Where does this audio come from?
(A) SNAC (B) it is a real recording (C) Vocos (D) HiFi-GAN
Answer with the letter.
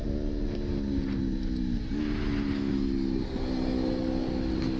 B